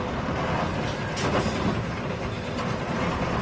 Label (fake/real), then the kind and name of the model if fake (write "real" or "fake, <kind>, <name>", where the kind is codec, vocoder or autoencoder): real